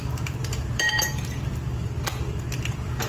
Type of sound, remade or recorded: recorded